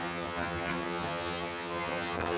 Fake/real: fake